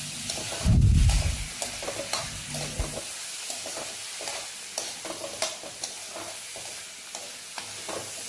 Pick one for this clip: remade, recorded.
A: recorded